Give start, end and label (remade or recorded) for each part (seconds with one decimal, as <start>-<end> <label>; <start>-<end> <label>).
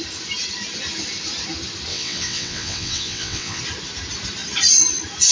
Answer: 0.0-1.9 recorded; 1.9-3.6 remade; 3.6-5.3 recorded